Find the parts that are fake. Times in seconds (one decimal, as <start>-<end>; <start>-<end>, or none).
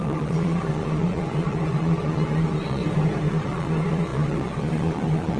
0.0-2.8; 3.3-5.4